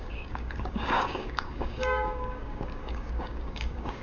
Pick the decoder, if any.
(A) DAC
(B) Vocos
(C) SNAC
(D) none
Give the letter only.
A